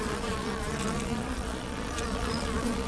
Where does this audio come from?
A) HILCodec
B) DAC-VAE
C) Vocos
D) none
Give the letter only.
C